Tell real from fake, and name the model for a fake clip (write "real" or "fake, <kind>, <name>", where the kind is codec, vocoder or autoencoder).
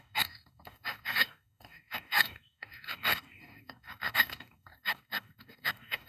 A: fake, codec, DAC